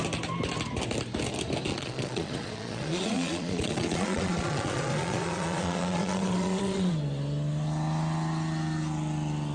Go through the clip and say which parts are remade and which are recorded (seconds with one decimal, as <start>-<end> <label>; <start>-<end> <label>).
0.0-1.7 recorded; 1.7-6.9 remade; 6.9-9.5 recorded